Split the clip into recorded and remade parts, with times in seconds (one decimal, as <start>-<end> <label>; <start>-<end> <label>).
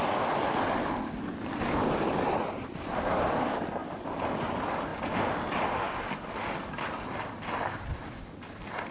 0.0-8.9 recorded